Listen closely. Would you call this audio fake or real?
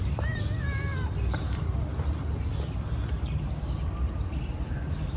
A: fake